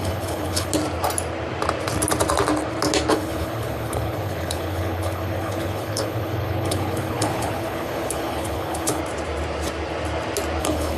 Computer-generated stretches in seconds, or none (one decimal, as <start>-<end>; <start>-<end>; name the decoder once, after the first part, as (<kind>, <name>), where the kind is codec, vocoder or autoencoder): 0.0-0.7 (codec, HILCodec); 3.1-9.0; 10.6-11.0

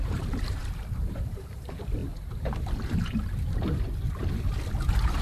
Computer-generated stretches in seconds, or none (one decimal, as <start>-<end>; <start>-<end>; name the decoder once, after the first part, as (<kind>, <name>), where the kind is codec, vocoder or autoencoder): 0.0-0.6 (vocoder, BigVGAN v2); 1.1-2.0

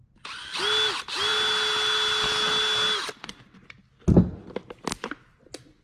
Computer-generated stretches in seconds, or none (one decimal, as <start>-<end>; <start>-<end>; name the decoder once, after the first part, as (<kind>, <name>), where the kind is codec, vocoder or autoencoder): none

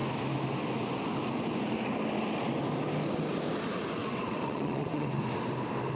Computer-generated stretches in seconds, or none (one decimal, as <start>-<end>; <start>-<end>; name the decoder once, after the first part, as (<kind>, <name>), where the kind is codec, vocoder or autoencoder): 4.0-5.2 (vocoder, WaveNeXt)